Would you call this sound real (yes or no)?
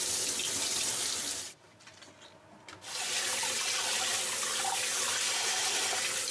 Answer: yes